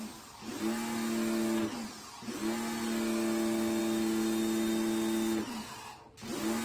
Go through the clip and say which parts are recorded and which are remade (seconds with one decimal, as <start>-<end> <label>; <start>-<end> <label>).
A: 0.0-6.6 recorded